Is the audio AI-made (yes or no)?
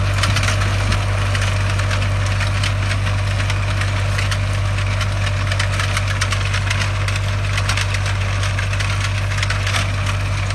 no